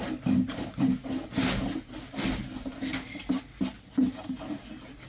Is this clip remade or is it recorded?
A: recorded